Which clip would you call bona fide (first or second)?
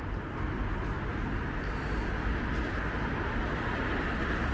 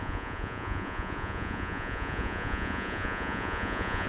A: first